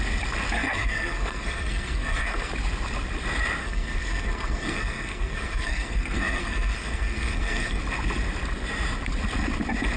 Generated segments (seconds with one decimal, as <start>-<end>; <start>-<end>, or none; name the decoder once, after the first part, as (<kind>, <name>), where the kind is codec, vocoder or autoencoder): 0.6-2.5 (codec, SNAC); 3.6-7.8